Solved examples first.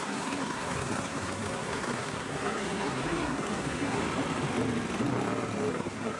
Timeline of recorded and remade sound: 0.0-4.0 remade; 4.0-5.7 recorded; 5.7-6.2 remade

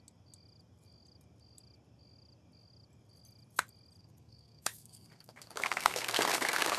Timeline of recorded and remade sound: 0.0-4.0 recorded; 4.0-6.8 remade